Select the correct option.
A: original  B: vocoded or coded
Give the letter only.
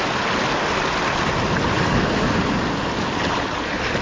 A